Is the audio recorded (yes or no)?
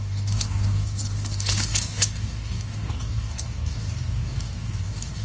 no